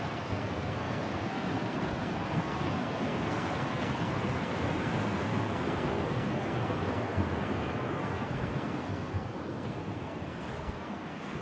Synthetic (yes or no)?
yes